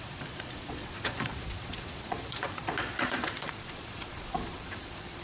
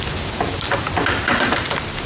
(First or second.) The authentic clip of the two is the second